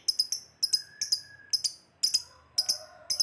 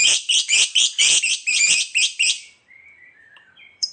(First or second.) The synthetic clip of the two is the second